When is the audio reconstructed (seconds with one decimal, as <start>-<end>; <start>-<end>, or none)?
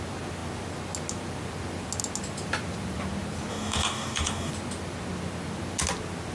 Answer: 3.5-4.5